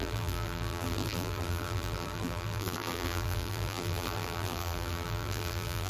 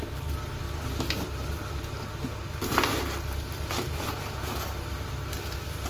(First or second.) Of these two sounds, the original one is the second